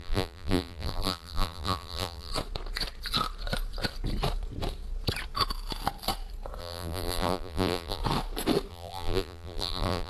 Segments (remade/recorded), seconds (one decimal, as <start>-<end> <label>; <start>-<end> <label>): 0.0-2.3 remade; 2.3-6.6 recorded; 6.6-8.0 remade; 8.0-8.7 recorded; 8.7-10.1 remade